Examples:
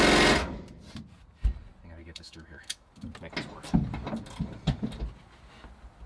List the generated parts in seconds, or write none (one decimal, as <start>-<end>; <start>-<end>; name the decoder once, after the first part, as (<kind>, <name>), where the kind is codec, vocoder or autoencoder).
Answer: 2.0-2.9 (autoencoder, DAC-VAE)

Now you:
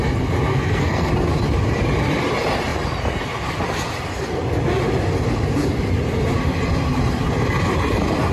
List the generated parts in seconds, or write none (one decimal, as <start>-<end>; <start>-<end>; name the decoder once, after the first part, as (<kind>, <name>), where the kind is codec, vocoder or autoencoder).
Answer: 0.5-1.1 (codec, SNAC)

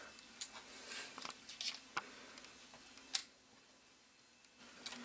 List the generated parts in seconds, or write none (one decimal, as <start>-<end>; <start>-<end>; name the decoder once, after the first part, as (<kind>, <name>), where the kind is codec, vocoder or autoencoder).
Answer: none

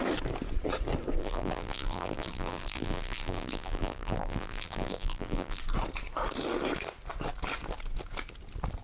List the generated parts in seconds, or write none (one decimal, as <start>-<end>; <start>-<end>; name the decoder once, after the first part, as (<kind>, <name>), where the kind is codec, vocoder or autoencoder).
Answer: 1.2-5.6 (vocoder, BigVGAN v2)

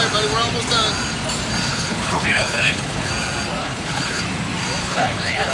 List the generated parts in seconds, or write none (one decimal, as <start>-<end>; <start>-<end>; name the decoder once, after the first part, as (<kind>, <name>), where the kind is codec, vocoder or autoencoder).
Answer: 1.7-3.1 (codec, HILCodec); 3.6-4.2; 4.8-5.5

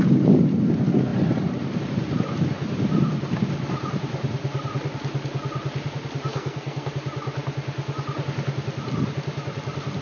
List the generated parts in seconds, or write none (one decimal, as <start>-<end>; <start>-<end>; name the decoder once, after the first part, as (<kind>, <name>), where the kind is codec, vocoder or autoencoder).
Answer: 6.3-6.9 (codec, SNAC)